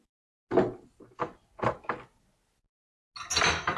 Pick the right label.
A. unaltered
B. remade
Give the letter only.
A